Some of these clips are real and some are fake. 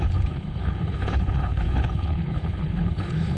fake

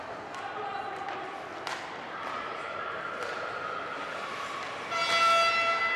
real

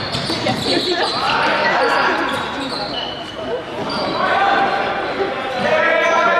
real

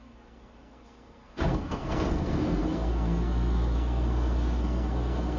fake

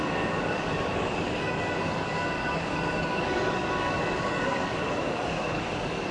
fake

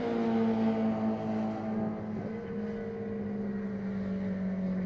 real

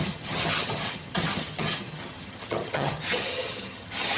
fake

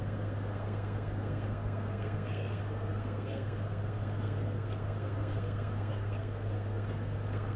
fake